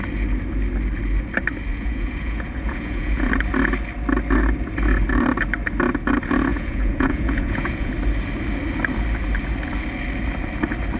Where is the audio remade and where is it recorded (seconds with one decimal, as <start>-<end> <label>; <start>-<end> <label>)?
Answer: 0.0-1.7 recorded; 1.7-3.3 remade; 3.3-6.5 recorded; 6.5-7.9 remade; 7.9-11.0 recorded